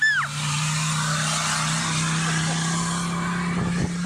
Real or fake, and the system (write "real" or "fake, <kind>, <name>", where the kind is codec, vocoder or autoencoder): real